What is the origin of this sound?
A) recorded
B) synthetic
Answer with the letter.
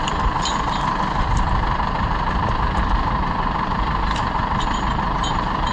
B